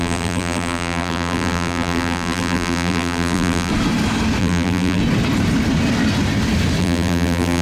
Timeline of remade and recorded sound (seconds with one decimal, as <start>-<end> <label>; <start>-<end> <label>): 0.0-3.7 remade; 3.7-4.4 recorded; 4.4-5.0 remade; 5.0-6.8 recorded; 6.8-7.6 remade